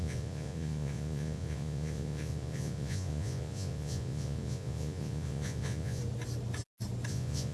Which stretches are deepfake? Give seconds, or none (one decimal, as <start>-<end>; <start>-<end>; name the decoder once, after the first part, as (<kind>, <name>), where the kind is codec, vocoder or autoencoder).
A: 0.0-6.0 (vocoder, Vocos); 7.1-7.5